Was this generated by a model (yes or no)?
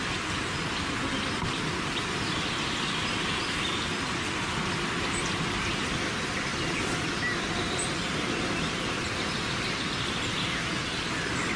no